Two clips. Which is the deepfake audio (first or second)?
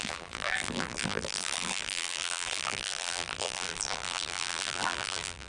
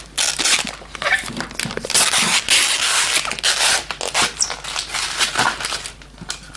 first